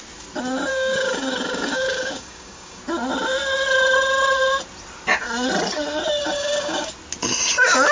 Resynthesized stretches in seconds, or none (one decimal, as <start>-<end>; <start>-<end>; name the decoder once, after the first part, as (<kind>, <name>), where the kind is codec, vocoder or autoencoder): 0.7-2.8 (codec, DAC); 6.2-6.9